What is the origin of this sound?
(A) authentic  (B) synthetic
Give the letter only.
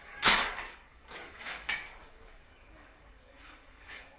B